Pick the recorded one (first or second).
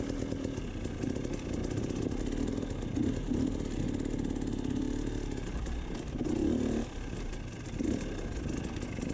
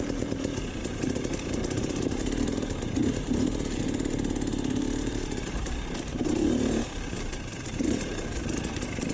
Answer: first